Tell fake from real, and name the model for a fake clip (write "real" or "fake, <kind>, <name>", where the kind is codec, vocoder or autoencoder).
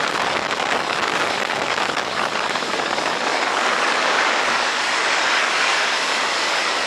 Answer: fake, codec, DAC